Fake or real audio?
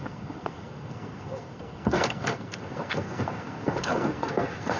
fake